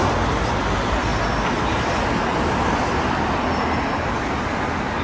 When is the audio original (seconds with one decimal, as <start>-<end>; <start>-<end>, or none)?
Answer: 0.0-5.0